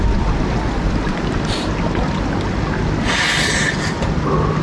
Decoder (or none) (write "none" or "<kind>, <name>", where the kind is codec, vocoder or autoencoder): none